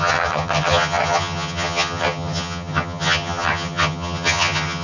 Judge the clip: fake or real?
fake